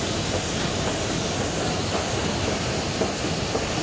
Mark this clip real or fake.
real